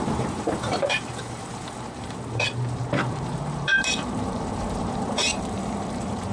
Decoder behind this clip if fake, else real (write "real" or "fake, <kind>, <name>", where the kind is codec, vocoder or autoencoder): fake, vocoder, BigVGAN v2